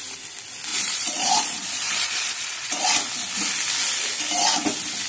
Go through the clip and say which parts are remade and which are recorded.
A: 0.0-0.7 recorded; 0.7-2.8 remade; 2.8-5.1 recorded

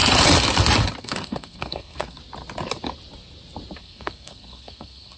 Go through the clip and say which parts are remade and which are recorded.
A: 0.0-1.0 recorded; 1.0-2.2 remade; 2.2-3.8 recorded; 3.8-5.2 remade

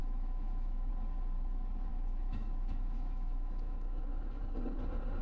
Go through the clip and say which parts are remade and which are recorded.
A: 0.0-0.9 remade; 0.9-1.9 recorded; 1.9-4.4 remade; 4.4-5.2 recorded

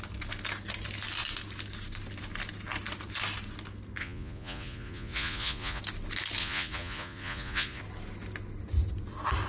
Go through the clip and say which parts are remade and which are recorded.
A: 0.0-4.0 recorded; 4.0-5.8 remade; 5.8-6.4 recorded; 6.4-7.8 remade; 7.8-9.5 recorded